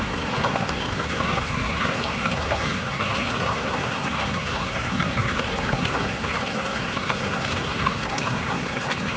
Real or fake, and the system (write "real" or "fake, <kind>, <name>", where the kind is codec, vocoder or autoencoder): fake, codec, SNAC